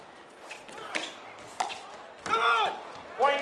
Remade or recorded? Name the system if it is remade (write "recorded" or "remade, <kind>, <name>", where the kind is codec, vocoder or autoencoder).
recorded